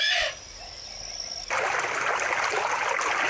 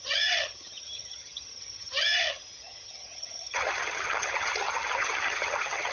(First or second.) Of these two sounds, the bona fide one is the first